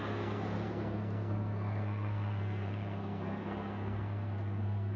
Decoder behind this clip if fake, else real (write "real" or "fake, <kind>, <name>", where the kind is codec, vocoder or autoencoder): fake, codec, SNAC